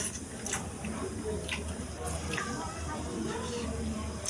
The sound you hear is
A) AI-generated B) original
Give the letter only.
B